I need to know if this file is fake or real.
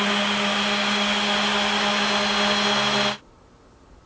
real